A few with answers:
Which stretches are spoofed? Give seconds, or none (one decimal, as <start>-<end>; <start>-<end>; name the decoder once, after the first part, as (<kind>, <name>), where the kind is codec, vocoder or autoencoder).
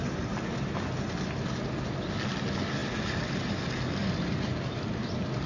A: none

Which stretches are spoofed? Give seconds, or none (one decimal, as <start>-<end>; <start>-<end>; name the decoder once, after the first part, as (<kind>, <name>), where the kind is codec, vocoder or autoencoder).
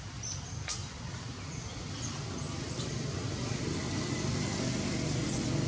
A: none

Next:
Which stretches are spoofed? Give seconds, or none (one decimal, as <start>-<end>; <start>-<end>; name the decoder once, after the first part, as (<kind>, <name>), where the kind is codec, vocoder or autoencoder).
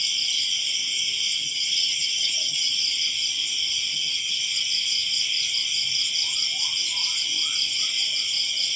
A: 1.4-2.7 (vocoder, HiFi-GAN); 3.9-4.4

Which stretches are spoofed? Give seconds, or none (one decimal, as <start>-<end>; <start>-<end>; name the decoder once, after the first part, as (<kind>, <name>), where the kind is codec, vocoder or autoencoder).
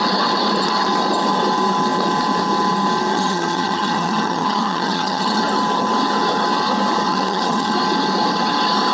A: 3.1-5.4 (vocoder, HiFi-GAN); 7.1-7.7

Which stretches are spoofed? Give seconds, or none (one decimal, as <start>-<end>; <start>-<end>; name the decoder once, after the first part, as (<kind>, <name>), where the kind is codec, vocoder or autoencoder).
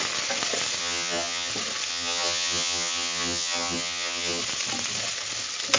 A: 0.8-1.5 (vocoder, HiFi-GAN); 1.9-4.4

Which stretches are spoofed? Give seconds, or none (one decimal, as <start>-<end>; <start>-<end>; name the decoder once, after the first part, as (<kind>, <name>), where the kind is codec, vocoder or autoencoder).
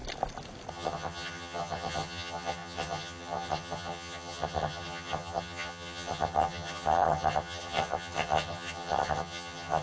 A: 0.7-9.8 (vocoder, HiFi-GAN)